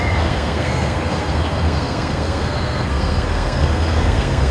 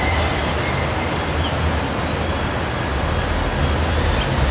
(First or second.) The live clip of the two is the second